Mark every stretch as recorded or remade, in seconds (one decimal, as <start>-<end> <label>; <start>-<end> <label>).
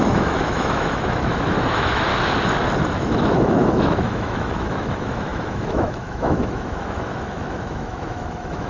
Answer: 0.0-2.1 remade; 2.1-3.0 recorded; 3.0-8.7 remade